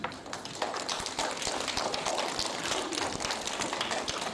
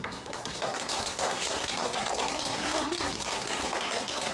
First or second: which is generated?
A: second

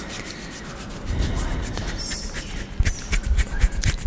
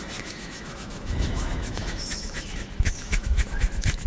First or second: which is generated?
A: second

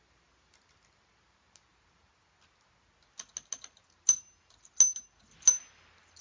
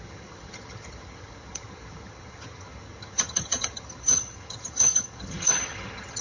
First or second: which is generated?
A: second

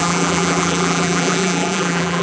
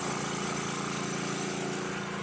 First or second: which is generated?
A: first